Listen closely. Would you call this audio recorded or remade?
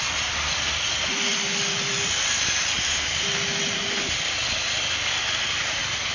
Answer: recorded